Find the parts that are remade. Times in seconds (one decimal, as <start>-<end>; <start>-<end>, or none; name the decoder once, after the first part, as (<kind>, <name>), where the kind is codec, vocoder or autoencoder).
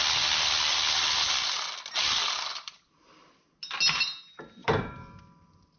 4.6-5.2 (vocoder, BigVGAN v2)